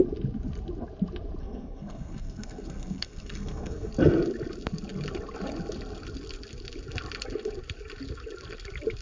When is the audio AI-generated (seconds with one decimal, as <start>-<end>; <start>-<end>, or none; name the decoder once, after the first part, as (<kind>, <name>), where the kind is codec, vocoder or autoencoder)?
1.4-3.9 (codec, SNAC)